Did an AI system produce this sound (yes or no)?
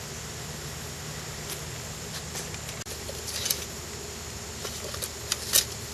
no